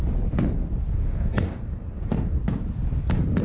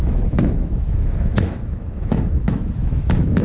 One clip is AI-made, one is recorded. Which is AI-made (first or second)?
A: second